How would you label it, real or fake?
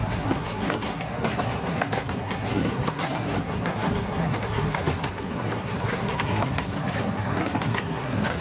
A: fake